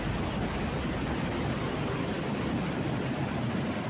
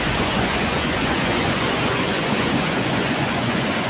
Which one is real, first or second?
first